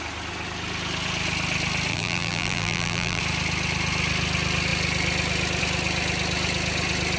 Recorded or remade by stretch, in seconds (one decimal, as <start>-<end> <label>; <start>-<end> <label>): 0.0-1.9 recorded; 1.9-3.2 remade; 3.2-7.2 recorded